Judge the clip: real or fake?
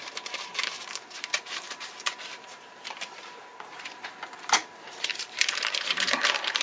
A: fake